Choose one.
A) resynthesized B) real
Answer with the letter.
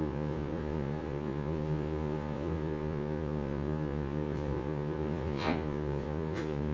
A